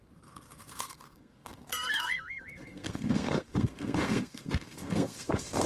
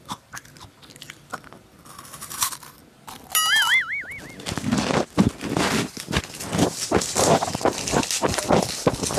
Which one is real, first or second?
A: second